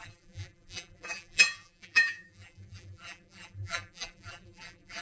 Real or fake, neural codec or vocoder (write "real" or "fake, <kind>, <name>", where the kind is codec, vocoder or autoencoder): fake, vocoder, BigVGAN v2